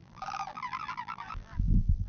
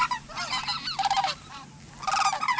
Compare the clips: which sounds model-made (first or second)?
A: first